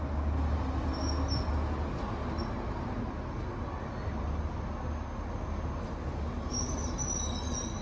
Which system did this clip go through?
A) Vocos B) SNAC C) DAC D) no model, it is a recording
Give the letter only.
D